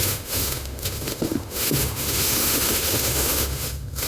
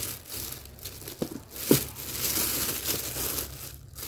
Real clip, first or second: second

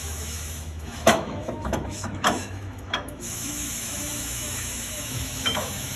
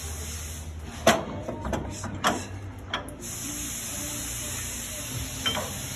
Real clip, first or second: second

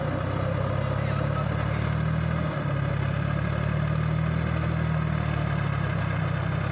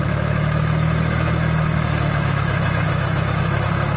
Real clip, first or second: first